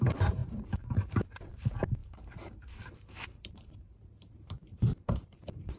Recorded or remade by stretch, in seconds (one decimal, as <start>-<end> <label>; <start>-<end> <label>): 0.0-5.8 remade